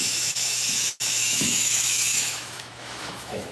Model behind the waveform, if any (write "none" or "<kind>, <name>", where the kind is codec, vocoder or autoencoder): autoencoder, DAC-VAE